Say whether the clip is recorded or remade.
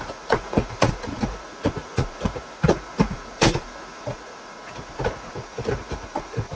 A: remade